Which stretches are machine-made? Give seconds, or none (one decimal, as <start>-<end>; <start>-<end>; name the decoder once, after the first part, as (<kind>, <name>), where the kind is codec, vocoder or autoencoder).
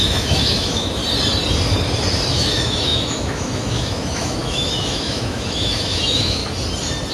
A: 0.0-1.0 (autoencoder, DAC-VAE); 2.3-6.4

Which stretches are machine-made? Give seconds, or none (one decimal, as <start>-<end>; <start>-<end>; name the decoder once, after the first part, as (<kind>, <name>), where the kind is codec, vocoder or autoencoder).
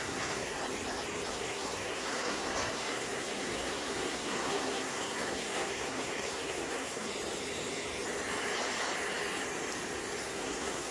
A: 0.0-0.6 (codec, SNAC); 1.3-7.1; 10.2-10.9